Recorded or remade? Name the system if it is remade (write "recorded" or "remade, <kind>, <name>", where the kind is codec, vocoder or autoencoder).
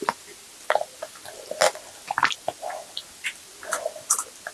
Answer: recorded